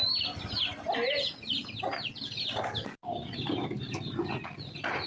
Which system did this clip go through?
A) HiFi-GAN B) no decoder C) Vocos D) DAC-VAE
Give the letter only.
B